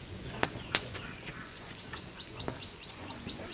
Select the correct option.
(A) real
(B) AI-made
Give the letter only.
B